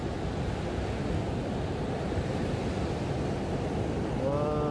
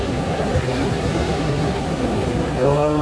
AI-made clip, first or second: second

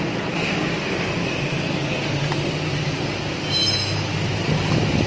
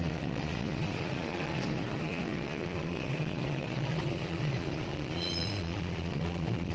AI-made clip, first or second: second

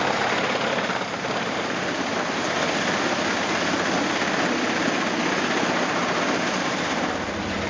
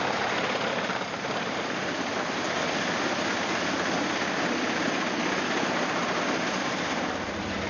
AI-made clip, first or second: second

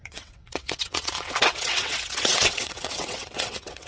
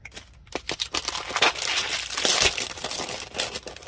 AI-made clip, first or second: first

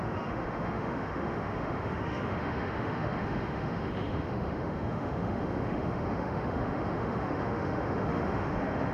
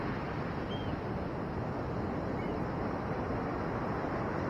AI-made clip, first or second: first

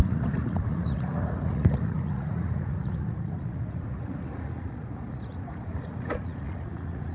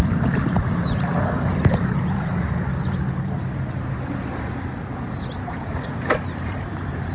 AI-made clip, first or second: first